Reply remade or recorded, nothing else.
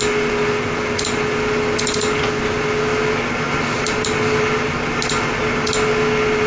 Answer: recorded